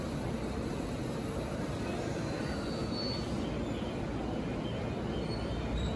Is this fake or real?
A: real